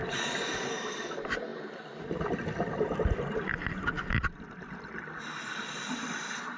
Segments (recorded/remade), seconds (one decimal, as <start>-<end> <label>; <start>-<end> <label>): 0.0-6.6 recorded